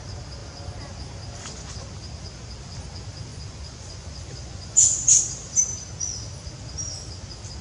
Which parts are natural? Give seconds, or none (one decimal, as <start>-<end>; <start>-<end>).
0.0-3.3; 5.2-7.6